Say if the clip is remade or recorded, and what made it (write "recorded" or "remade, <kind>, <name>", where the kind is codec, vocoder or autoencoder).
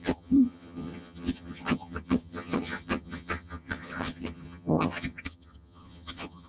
remade, vocoder, HiFi-GAN